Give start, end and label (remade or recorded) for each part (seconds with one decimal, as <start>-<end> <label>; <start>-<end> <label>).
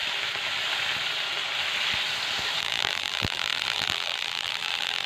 0.0-2.6 recorded; 2.6-5.1 remade